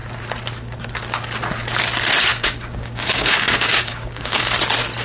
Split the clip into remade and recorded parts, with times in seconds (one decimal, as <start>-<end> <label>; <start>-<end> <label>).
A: 0.0-2.3 recorded; 2.3-4.4 remade; 4.4-5.0 recorded